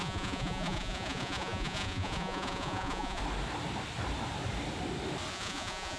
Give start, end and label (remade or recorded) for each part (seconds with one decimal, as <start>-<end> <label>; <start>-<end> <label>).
0.0-3.2 remade; 3.2-5.3 recorded; 5.3-6.0 remade